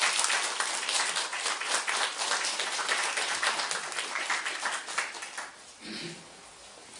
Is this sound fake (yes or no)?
no